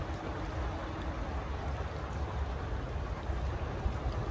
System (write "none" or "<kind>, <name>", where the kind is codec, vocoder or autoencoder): none